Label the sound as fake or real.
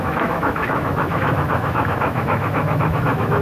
fake